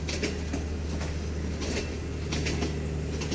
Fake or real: real